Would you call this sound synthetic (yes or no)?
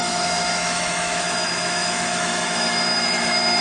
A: yes